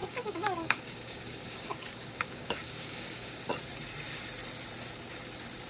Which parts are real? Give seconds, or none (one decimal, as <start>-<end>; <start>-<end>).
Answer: 3.4-5.7